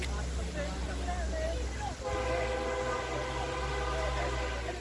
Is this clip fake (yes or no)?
no